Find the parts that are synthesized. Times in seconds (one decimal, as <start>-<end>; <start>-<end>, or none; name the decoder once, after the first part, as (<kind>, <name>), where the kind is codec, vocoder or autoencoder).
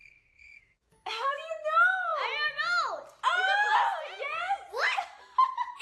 0.0-1.5 (codec, DAC)